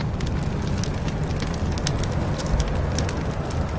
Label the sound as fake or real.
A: real